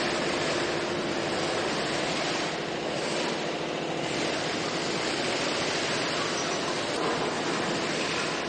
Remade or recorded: recorded